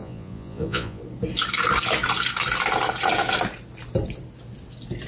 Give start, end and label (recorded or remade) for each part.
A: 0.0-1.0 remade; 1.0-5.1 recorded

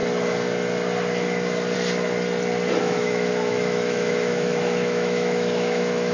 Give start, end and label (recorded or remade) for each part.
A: 0.0-2.8 recorded; 2.8-6.1 remade

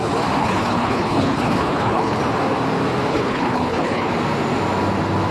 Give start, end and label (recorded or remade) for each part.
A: 0.0-0.4 recorded; 0.4-2.2 remade; 2.2-3.1 recorded; 3.1-4.1 remade; 4.1-5.3 recorded

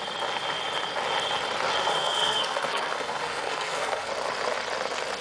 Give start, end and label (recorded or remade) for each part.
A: 0.0-2.0 recorded; 2.0-4.1 remade; 4.1-5.2 recorded

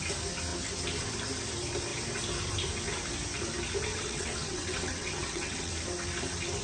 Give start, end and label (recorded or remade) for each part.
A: 0.0-3.9 recorded; 3.9-5.7 remade; 5.7-6.6 recorded

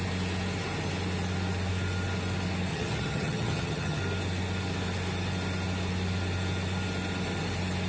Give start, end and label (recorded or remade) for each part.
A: 0.0-2.7 recorded; 2.7-4.0 remade; 4.0-7.9 recorded

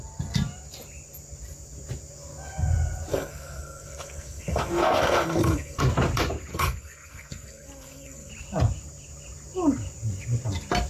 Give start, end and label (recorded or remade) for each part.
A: 0.0-3.1 recorded; 3.1-5.8 remade; 5.8-6.5 recorded; 6.5-8.3 remade; 8.3-10.9 recorded

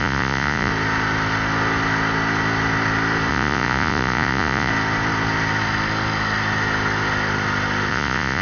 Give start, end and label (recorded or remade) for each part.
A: 0.0-0.7 remade; 0.7-3.3 recorded; 3.3-4.7 remade; 4.7-7.9 recorded; 7.9-8.4 remade